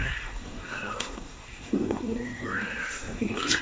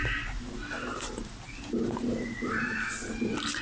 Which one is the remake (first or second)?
first